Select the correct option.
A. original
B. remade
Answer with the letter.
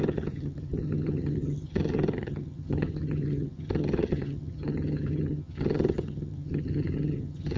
B